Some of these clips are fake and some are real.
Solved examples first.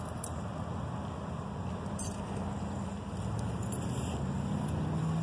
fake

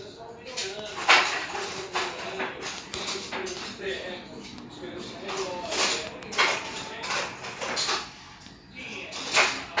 real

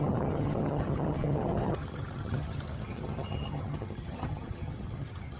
fake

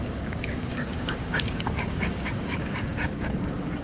fake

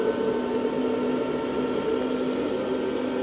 real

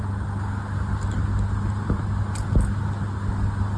real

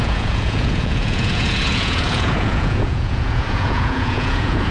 fake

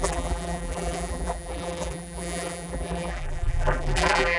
fake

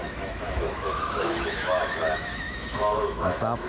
fake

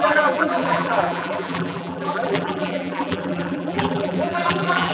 fake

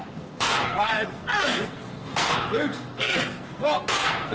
fake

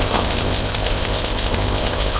fake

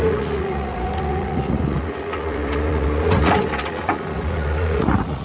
fake